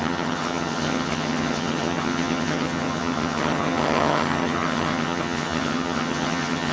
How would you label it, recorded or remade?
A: remade